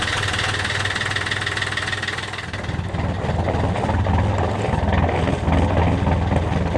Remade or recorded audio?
recorded